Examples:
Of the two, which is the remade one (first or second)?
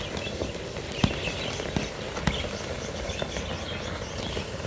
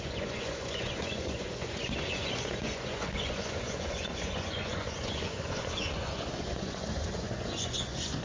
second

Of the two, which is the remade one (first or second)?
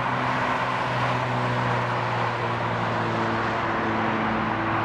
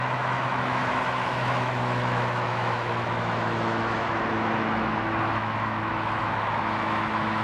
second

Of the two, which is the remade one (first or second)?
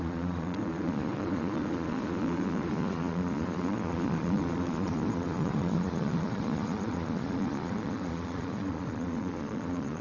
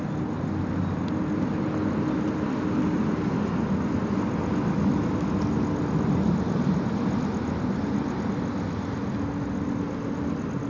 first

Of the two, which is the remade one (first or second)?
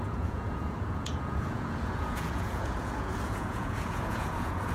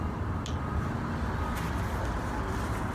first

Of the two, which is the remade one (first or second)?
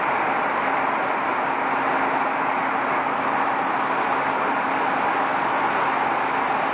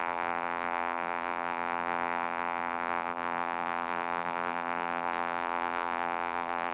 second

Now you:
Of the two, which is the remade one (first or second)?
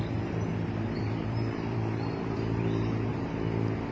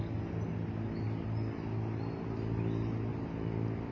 first